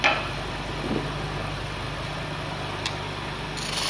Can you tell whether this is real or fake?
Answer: real